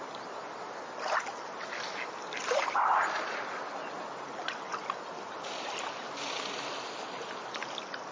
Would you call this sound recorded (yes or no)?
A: yes